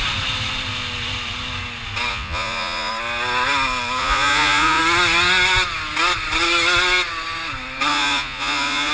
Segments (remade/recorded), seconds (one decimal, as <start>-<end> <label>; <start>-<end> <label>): 0.0-2.1 recorded; 2.1-2.9 remade; 2.9-4.0 recorded; 4.0-4.8 remade; 4.8-7.9 recorded; 7.9-8.9 remade